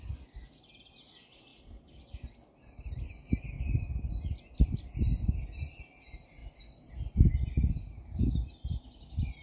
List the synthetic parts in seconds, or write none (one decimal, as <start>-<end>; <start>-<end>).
none